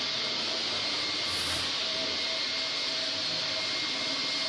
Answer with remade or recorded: recorded